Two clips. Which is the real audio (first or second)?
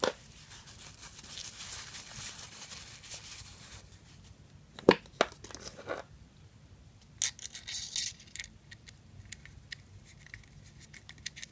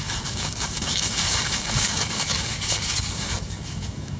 first